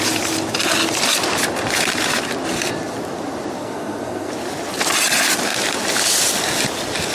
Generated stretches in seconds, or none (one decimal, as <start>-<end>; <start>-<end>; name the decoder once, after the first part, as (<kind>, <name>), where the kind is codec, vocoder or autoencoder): 3.6-4.3 (codec, SNAC)